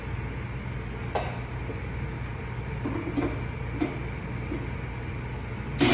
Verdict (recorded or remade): recorded